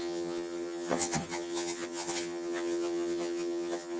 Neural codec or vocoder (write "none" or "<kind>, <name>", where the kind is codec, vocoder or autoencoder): vocoder, HiFi-GAN